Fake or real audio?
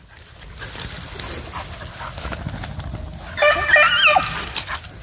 real